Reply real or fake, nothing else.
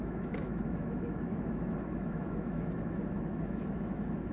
fake